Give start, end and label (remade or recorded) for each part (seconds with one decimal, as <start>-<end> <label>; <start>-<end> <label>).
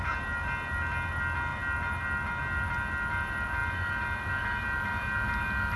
0.0-5.8 recorded